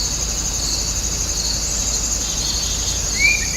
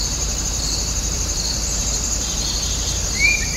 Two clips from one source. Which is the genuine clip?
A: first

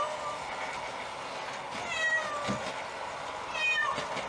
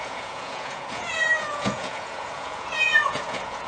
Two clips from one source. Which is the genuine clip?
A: first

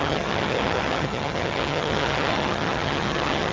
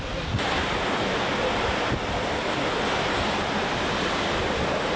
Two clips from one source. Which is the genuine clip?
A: second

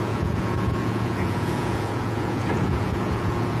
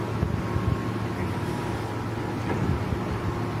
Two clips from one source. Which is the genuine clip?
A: second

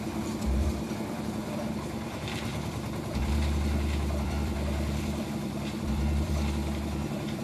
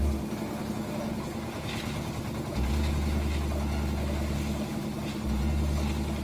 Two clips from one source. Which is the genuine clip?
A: second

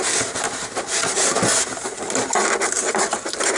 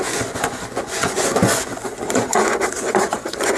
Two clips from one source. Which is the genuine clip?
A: first